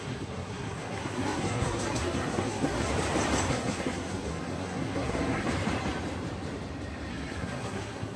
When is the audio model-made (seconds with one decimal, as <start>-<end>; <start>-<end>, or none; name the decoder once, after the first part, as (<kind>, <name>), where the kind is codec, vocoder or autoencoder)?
0.0-2.9 (codec, SNAC); 3.5-5.5; 7.1-8.2